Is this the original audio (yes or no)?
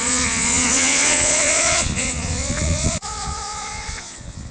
no